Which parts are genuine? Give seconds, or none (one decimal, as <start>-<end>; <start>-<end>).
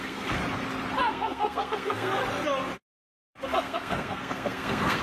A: 0.4-1.0; 2.2-3.0